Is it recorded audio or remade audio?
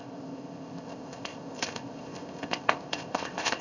remade